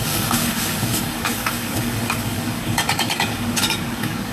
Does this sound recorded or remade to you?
remade